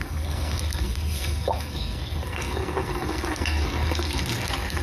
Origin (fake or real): fake